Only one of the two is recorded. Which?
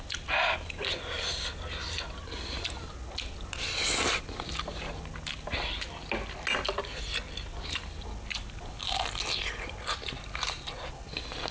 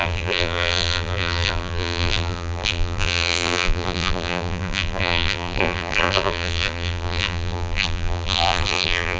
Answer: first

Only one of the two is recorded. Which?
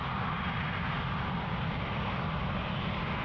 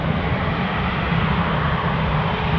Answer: first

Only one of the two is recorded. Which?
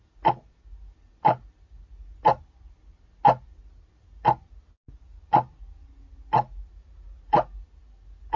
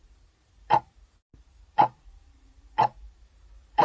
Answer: first